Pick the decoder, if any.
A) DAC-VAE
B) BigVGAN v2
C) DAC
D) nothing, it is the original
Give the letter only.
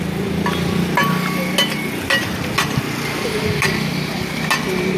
D